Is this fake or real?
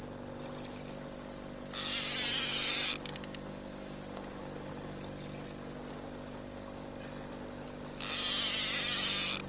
real